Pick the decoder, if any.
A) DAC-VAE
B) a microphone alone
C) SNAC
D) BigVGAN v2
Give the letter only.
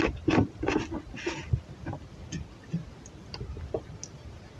B